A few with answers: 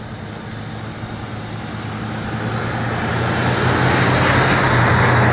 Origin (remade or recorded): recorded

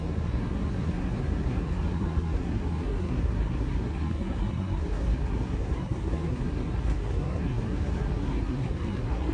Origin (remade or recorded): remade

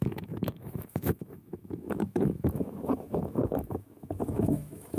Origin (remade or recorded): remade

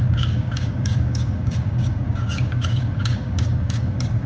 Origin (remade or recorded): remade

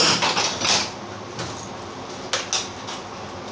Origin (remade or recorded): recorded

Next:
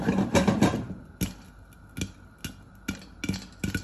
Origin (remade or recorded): recorded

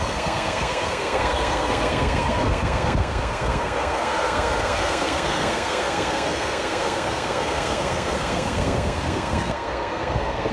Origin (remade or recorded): remade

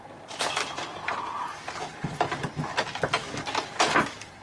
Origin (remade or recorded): recorded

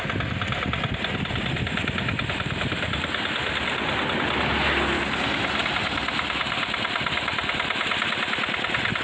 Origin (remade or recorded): recorded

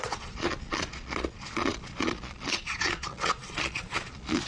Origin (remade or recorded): remade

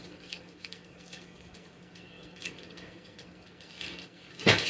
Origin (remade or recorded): remade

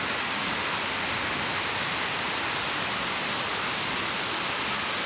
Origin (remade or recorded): recorded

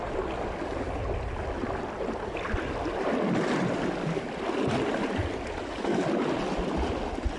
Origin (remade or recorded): recorded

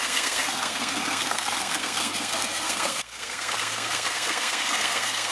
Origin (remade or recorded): remade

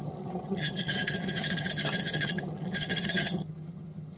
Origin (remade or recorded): remade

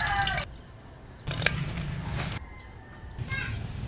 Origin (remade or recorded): recorded